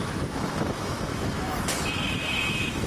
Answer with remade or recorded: remade